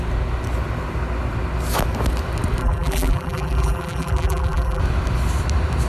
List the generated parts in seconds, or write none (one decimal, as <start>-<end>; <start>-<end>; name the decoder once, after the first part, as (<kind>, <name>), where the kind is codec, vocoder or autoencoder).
2.6-4.8 (vocoder, BigVGAN v2)